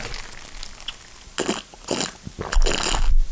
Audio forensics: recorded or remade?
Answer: recorded